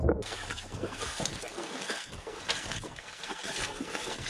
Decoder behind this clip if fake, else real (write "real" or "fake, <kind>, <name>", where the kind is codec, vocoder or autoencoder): fake, codec, SNAC